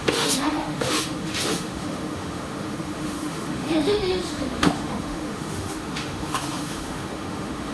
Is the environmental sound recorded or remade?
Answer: remade